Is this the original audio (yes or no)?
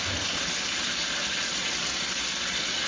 yes